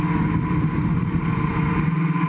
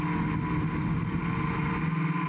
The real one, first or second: second